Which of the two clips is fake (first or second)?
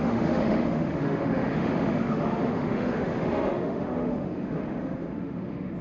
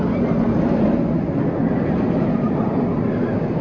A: first